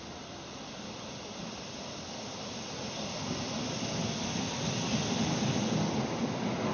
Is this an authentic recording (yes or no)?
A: yes